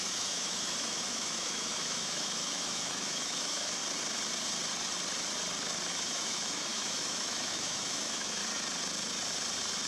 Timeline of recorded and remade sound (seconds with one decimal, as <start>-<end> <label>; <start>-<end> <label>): 0.0-3.8 remade; 3.8-5.9 recorded; 5.9-8.4 remade; 8.4-9.9 recorded